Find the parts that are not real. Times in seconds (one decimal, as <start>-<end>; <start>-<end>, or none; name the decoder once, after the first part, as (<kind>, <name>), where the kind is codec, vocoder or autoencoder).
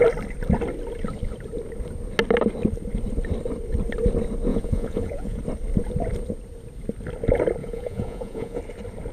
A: 4.5-5.4 (vocoder, Vocos); 7.6-8.6